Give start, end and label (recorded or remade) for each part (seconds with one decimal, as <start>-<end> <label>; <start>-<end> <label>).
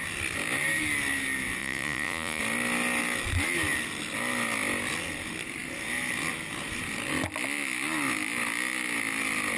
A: 0.0-1.6 recorded; 1.6-2.4 remade; 2.4-9.6 recorded